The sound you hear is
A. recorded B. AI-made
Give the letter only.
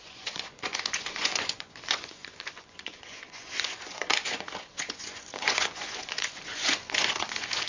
B